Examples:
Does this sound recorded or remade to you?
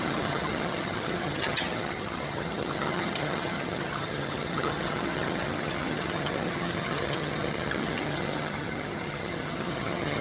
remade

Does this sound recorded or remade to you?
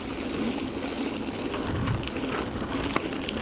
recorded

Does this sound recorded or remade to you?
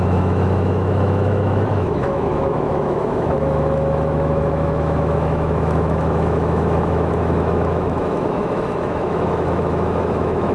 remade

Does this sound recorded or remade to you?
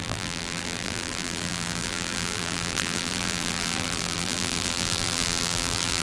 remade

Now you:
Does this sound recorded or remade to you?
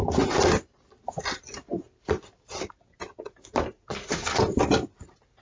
recorded